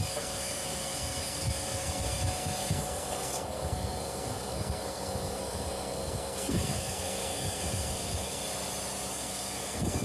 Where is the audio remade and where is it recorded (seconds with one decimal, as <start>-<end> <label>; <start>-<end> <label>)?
0.0-8.4 remade; 8.4-9.1 recorded; 9.1-10.0 remade

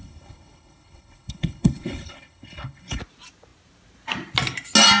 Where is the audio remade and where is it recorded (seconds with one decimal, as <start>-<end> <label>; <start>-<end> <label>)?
0.0-3.0 remade; 3.0-5.0 recorded

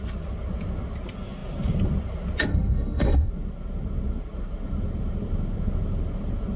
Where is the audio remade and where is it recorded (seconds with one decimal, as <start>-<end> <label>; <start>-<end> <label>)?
0.0-2.5 recorded; 2.5-3.3 remade; 3.3-6.6 recorded

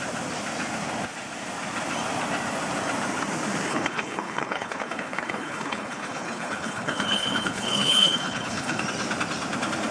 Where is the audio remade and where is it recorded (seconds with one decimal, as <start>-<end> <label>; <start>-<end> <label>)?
0.0-3.7 recorded; 3.7-8.8 remade; 8.8-9.9 recorded

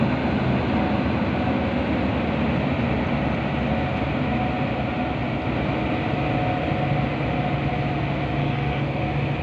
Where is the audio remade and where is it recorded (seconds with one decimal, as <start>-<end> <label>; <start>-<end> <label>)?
0.0-8.4 recorded; 8.4-9.0 remade; 9.0-9.4 recorded

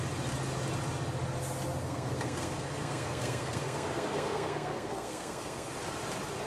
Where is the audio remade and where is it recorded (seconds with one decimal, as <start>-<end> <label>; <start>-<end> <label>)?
0.0-1.8 recorded; 1.8-5.7 remade; 5.7-6.5 recorded

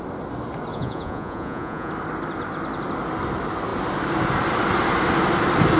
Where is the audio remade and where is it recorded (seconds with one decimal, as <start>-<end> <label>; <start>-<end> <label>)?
0.0-0.7 recorded; 0.7-1.9 remade; 1.9-5.8 recorded

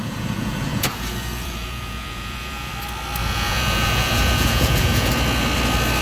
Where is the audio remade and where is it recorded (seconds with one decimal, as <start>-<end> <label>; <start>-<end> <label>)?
0.0-2.7 remade; 2.7-3.2 recorded; 3.2-5.1 remade; 5.1-6.0 recorded